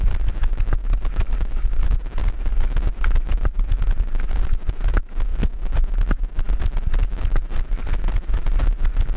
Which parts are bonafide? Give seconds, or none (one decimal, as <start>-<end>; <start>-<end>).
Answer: 0.0-9.2